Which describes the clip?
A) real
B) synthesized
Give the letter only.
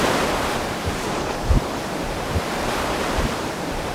B